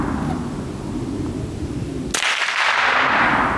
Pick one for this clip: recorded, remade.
recorded